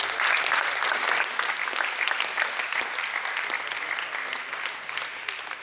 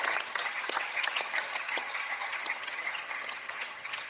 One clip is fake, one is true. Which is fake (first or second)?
second